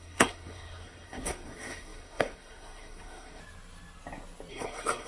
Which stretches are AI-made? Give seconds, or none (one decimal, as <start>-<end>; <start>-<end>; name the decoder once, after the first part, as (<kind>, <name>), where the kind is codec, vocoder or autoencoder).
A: 0.0-3.4 (codec, SNAC); 4.5-5.1